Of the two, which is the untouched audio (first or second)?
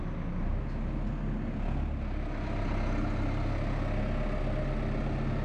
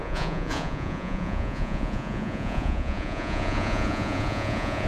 first